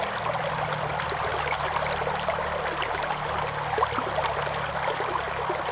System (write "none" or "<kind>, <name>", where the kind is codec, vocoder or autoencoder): none